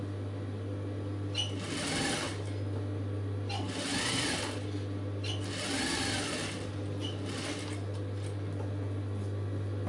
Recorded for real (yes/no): yes